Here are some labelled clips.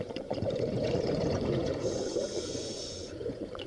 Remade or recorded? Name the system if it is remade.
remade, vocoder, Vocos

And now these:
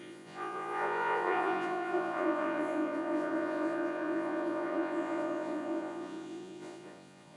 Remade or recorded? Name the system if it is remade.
remade, vocoder, Vocos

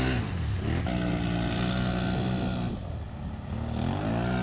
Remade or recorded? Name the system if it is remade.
recorded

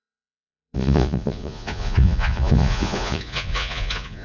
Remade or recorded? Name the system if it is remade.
remade, vocoder, Vocos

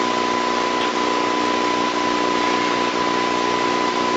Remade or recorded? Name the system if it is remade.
recorded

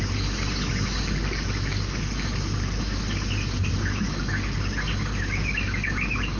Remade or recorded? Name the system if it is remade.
recorded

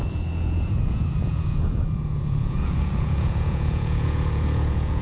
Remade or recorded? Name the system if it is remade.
remade, vocoder, Vocos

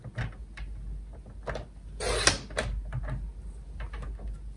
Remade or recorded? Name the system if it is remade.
recorded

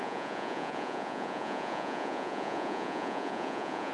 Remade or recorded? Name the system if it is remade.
remade, vocoder, Vocos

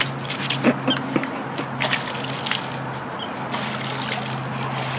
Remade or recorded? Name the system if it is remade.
recorded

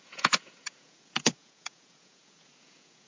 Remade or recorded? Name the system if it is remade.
remade, vocoder, Vocos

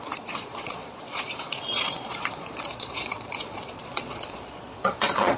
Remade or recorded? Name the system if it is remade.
remade, vocoder, Vocos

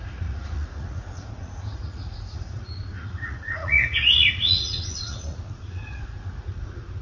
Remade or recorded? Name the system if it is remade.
remade, vocoder, Vocos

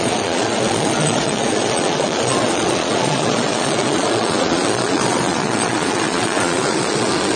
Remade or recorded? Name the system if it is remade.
remade, vocoder, Vocos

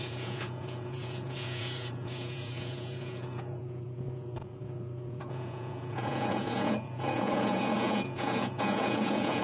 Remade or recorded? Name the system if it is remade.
remade, vocoder, Vocos